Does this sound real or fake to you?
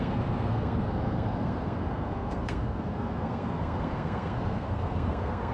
fake